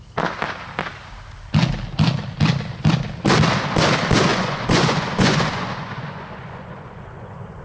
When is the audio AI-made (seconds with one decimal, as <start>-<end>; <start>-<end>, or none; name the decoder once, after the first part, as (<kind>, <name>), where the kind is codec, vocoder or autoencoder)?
4.3-7.6 (vocoder, Vocos)